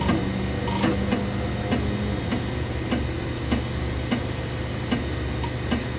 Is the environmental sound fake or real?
real